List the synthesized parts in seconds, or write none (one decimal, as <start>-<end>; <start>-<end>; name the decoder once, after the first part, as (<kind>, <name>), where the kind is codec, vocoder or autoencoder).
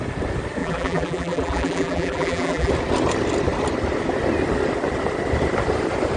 0.6-2.7 (vocoder, BigVGAN v2)